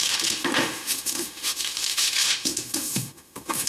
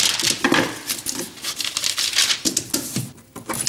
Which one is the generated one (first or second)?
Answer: first